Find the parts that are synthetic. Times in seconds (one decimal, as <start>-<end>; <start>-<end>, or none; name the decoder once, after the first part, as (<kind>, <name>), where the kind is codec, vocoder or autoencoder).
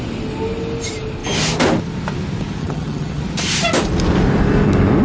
2.6-3.2 (vocoder, HiFi-GAN)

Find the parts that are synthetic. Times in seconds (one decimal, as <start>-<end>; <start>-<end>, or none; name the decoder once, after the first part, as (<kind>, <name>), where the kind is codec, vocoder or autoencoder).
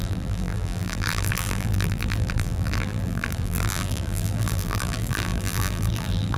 0.0-6.4 (vocoder, BigVGAN v2)